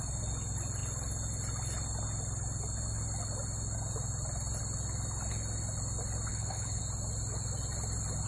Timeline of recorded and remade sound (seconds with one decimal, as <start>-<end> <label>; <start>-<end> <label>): 0.0-6.3 recorded; 6.3-6.8 remade; 6.8-8.3 recorded